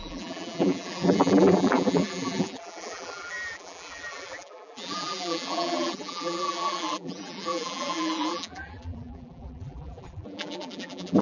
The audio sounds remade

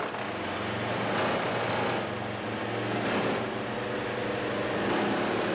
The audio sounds recorded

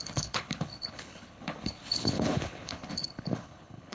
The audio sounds remade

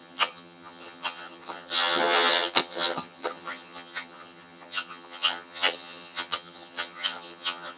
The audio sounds remade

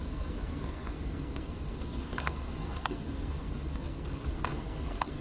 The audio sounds remade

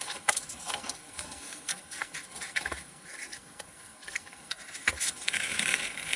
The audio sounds remade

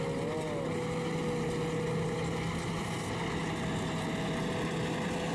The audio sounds recorded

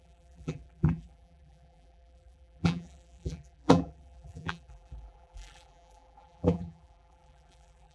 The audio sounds remade